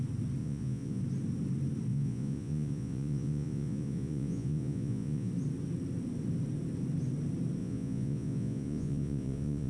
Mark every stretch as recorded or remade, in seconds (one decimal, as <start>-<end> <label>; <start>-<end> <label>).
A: 0.0-0.4 recorded; 0.4-1.0 remade; 1.0-1.9 recorded; 1.9-5.3 remade; 5.3-7.6 recorded; 7.6-9.7 remade